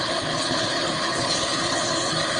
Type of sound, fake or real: fake